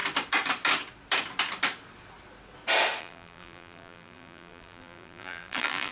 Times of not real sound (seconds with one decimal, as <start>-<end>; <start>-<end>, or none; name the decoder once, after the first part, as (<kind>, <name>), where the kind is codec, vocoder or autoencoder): 3.0-5.9 (vocoder, BigVGAN v2)

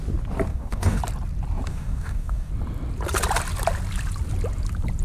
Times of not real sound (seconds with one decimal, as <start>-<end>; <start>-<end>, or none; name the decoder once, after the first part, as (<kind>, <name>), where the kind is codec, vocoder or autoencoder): 0.5-1.0 (codec, DAC); 1.7-2.5